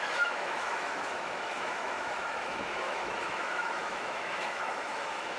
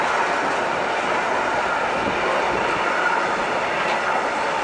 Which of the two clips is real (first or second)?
second